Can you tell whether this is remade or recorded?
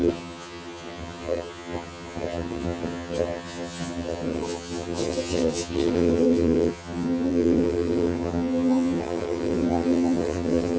remade